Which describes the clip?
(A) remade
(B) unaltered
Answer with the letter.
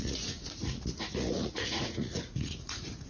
A